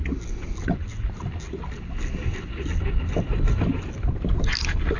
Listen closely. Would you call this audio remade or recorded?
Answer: recorded